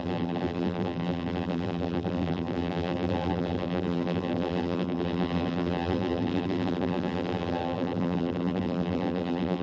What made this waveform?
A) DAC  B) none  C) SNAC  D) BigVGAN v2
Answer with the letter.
D